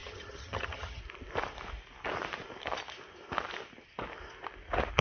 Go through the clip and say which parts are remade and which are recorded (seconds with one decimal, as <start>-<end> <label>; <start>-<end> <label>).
0.0-1.0 remade; 1.0-5.0 recorded